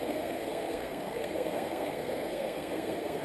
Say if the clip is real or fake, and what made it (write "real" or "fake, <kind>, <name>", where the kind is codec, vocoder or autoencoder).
fake, codec, SNAC